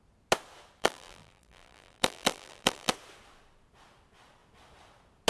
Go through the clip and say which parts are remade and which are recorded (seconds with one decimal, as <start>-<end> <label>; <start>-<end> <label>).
0.0-0.8 recorded; 0.8-2.9 remade; 2.9-5.3 recorded